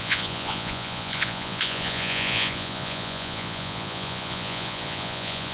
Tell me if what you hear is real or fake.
fake